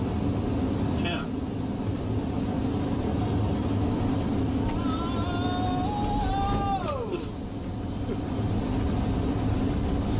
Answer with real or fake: real